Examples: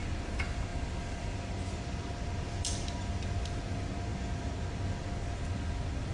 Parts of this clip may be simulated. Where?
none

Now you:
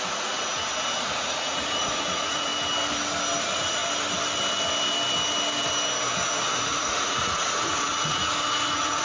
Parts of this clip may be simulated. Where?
0.0-0.5 (vocoder, Vocos); 1.0-2.5; 3.4-3.8; 6.6-9.0

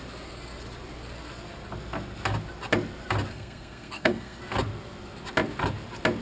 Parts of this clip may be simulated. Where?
3.3-4.4 (codec, SNAC)